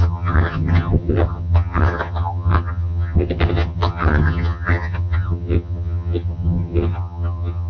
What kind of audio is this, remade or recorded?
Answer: remade